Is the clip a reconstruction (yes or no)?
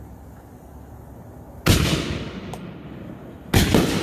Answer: no